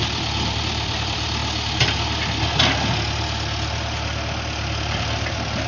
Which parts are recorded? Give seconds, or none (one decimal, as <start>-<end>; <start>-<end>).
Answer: 1.4-4.8